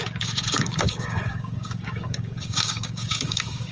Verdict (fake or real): fake